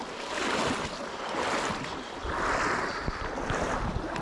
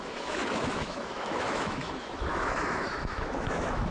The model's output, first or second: second